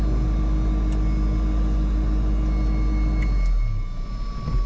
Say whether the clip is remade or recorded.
recorded